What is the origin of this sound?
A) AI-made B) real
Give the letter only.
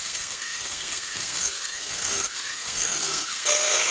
A